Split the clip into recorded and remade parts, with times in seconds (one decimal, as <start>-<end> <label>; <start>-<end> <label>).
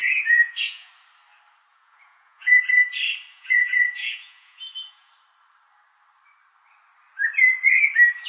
0.0-0.9 remade; 0.9-1.7 recorded; 1.7-2.6 remade; 2.6-3.3 recorded; 3.3-5.1 remade; 5.1-8.3 recorded